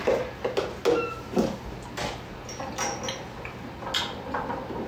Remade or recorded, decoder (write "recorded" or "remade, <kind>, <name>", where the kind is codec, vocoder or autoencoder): recorded